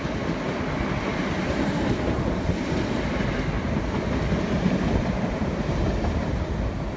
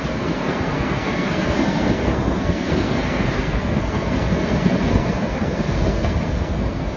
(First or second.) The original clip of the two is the first